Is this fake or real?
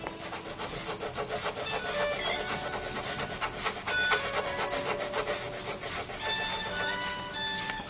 real